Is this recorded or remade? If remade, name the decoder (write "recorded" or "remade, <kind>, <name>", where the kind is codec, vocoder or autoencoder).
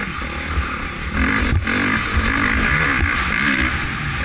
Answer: recorded